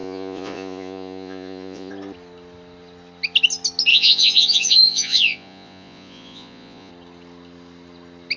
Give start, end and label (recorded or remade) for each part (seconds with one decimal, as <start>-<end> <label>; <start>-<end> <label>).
0.0-1.9 remade; 1.9-3.9 recorded; 3.9-6.9 remade; 6.9-8.4 recorded